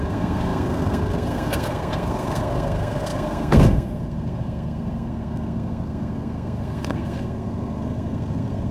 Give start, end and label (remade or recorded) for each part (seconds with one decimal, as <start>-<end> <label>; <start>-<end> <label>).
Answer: 0.0-8.7 remade

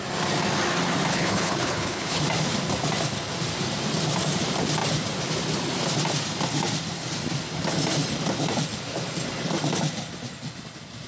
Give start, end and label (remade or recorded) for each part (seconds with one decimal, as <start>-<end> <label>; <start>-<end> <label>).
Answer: 0.0-1.1 recorded; 1.1-2.2 remade; 2.2-11.1 recorded

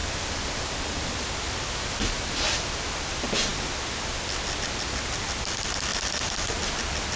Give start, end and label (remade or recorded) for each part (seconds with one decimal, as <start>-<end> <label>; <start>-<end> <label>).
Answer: 0.0-2.9 remade; 2.9-5.9 recorded; 5.9-6.6 remade; 6.6-7.2 recorded

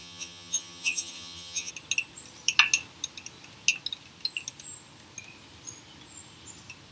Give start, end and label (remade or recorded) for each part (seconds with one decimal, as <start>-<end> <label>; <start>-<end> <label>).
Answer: 0.0-1.7 remade; 1.7-6.9 recorded

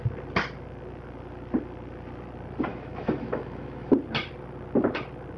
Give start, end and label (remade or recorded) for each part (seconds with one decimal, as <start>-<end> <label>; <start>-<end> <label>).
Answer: 0.0-2.7 recorded; 2.7-3.9 remade; 3.9-5.4 recorded